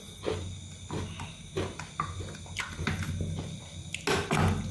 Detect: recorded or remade recorded